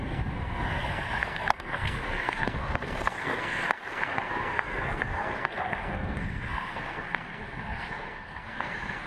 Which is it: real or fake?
fake